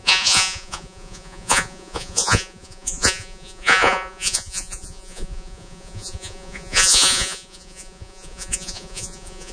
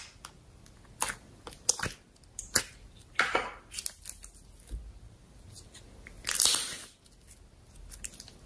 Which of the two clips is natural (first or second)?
second